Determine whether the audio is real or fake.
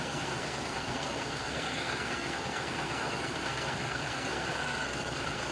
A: fake